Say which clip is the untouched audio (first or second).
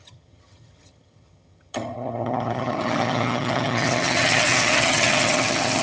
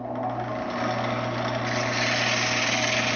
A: second